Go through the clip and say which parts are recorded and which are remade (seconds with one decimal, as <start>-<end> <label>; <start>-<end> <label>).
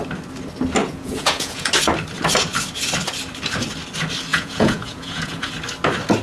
0.0-0.8 recorded; 0.8-1.7 remade; 1.7-4.3 recorded; 4.3-5.5 remade; 5.5-6.2 recorded